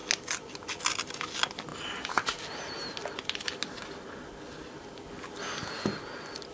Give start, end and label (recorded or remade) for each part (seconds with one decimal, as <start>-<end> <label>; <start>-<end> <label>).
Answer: 0.0-6.5 recorded